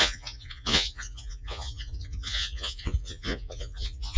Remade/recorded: remade